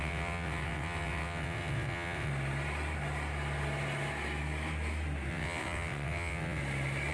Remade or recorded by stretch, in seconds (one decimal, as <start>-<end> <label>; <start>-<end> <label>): 0.0-2.3 remade; 2.3-5.3 recorded; 5.3-6.6 remade; 6.6-7.1 recorded